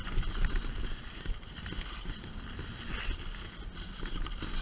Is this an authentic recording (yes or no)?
yes